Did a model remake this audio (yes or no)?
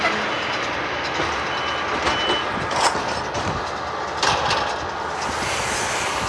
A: no